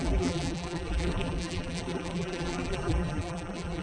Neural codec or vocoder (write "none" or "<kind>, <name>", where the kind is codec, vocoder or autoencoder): vocoder, BigVGAN v2